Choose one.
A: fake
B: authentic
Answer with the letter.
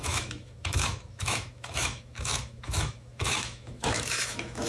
A